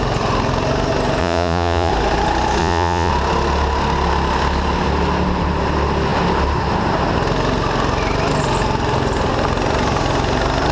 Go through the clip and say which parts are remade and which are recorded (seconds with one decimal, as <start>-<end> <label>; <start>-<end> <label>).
0.0-1.2 recorded; 1.2-1.9 remade; 1.9-2.6 recorded; 2.6-3.1 remade; 3.1-10.7 recorded